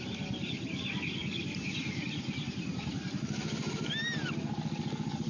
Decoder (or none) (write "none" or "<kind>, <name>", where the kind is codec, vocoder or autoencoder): none